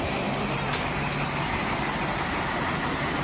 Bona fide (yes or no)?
yes